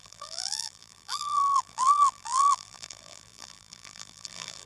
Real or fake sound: fake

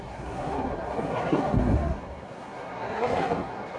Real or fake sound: fake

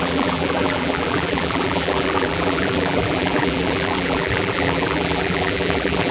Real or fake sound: fake